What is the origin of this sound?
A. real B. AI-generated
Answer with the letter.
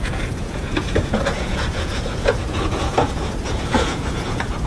B